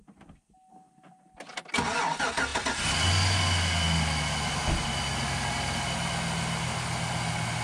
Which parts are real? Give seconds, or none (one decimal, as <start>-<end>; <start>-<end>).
0.0-7.6